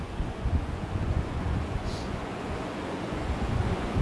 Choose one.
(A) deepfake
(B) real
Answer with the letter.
A